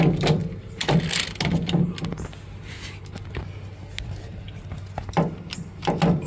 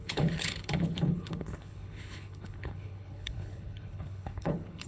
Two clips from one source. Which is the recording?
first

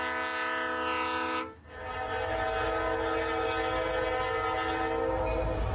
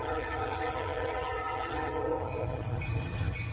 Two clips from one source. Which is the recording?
first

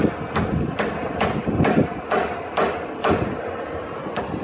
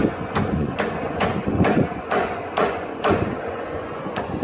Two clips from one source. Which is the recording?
first